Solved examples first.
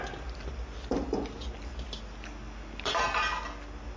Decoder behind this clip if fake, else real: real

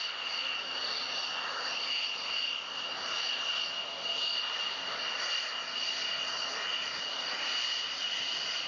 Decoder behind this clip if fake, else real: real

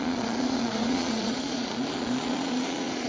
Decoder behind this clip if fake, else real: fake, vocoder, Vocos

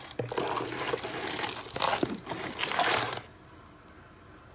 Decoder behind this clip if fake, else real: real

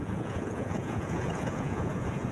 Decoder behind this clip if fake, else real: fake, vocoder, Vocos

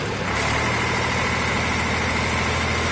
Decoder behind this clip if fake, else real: real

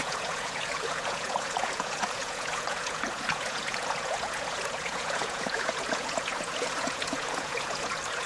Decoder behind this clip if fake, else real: fake, vocoder, Vocos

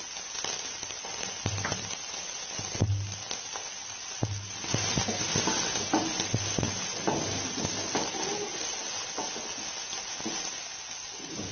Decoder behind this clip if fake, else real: real